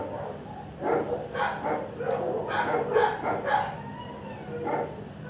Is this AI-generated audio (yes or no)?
no